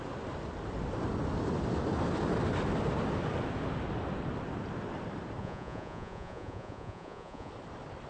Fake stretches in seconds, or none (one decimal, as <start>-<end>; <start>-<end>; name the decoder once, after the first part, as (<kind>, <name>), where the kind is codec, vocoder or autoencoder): 5.4-7.5 (vocoder, Vocos)